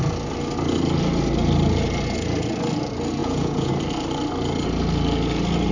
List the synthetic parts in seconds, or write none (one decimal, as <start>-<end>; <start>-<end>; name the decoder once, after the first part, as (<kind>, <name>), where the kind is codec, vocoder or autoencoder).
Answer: 3.2-3.7 (vocoder, Vocos)